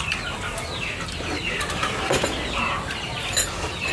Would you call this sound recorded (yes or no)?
yes